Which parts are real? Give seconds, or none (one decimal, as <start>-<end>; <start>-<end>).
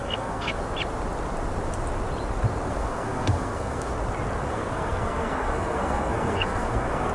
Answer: 0.6-2.7; 3.9-4.5